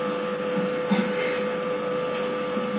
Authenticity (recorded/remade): recorded